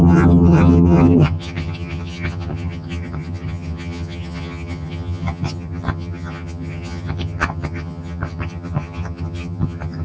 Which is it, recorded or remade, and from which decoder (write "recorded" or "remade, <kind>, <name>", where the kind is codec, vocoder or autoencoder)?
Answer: remade, vocoder, HiFi-GAN